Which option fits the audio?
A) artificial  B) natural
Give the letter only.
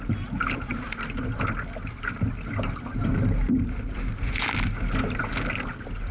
B